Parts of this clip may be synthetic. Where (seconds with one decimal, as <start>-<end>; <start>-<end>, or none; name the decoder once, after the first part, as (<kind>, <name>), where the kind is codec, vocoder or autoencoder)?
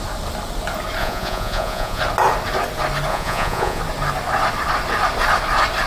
1.0-2.0 (vocoder, Vocos); 3.1-3.8